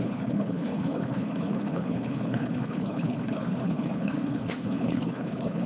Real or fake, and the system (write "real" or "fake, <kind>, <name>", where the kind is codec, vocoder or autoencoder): fake, codec, HILCodec